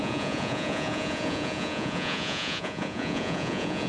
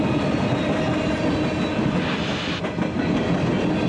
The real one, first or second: second